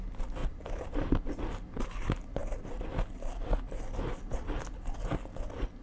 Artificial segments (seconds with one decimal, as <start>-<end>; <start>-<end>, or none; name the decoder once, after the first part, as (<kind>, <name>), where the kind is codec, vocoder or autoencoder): 0.4-1.2 (vocoder, BigVGAN v2)